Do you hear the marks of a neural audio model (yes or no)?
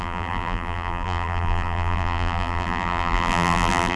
yes